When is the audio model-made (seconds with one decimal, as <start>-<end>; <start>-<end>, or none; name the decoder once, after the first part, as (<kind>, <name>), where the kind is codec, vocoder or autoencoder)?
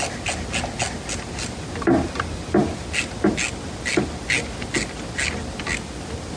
none